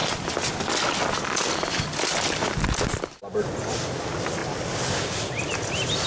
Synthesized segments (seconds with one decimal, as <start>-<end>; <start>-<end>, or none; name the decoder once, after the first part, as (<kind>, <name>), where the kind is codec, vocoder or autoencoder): 3.7-4.4 (vocoder, BigVGAN v2); 5.0-6.1